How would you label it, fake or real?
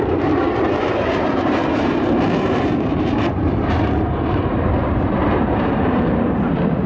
fake